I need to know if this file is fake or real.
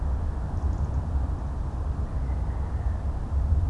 real